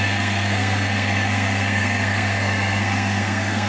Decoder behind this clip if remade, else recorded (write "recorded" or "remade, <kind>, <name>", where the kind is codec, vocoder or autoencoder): remade, codec, SNAC